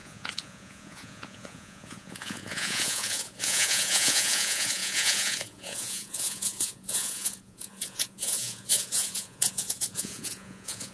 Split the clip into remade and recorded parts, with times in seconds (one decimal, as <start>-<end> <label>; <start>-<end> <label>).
0.0-10.9 remade